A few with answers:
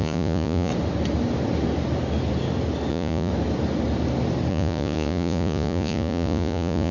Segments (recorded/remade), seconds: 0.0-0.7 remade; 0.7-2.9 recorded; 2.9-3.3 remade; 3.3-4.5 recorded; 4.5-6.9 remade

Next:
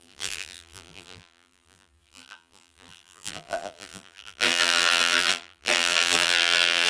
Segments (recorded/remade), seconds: 0.0-6.9 remade